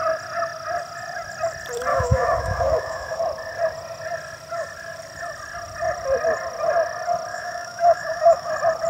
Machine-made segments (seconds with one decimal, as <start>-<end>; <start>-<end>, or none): 1.9-3.2; 7.3-8.5